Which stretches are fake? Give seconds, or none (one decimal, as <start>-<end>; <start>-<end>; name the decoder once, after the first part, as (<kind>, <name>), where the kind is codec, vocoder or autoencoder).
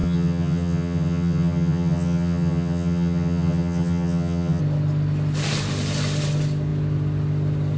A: 0.0-4.6 (vocoder, HiFi-GAN)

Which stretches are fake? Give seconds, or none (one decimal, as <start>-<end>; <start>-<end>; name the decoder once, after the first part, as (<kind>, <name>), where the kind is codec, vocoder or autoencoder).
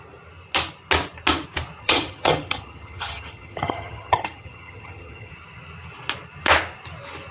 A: 1.8-5.3 (vocoder, HiFi-GAN)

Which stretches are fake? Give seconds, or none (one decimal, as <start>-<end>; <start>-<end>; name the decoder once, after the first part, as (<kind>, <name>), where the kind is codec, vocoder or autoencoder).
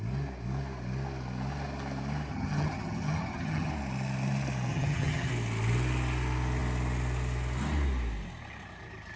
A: 2.3-3.7 (vocoder, HiFi-GAN); 4.7-5.3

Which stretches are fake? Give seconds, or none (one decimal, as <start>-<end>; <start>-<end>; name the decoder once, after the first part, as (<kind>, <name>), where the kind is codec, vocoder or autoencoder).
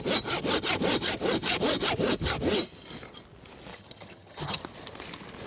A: 3.7-4.6 (vocoder, HiFi-GAN)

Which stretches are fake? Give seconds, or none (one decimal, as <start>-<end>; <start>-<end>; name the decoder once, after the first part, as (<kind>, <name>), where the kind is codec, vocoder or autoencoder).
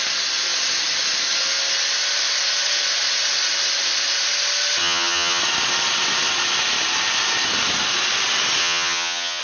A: 4.8-5.4 (vocoder, HiFi-GAN); 8.6-9.4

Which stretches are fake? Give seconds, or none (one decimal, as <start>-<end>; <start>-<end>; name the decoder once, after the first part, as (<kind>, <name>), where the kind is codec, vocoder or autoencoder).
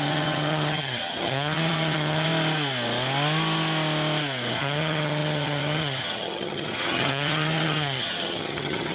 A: 0.0-2.3 (vocoder, HiFi-GAN); 4.5-8.9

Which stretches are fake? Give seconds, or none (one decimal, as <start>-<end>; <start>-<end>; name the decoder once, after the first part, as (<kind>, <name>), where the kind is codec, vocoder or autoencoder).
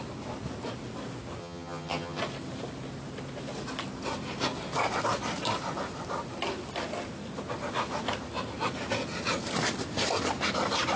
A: 1.4-2.2 (vocoder, HiFi-GAN)